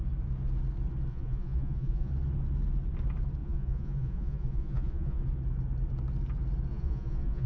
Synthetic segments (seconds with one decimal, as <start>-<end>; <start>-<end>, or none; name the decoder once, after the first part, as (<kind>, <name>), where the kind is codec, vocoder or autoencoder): 1.1-2.1 (vocoder, Vocos); 3.4-5.2; 6.7-7.5